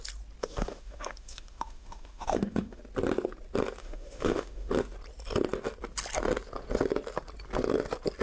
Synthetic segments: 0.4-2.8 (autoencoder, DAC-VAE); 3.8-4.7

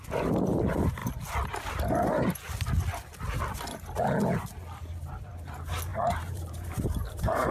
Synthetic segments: 5.9-7.5 (vocoder, BigVGAN v2)

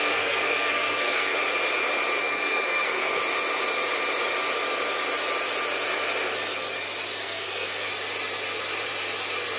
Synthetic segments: 0.0-1.3 (codec, SNAC); 2.2-3.2; 7.2-7.9

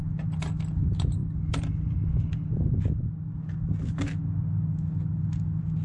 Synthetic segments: none

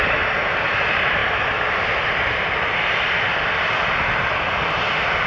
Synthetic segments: none

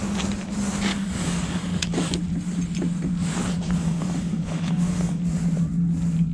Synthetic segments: 0.9-2.1 (codec, DAC); 3.8-5.2

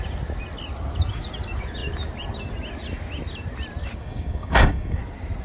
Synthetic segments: 4.0-5.0 (codec, DAC)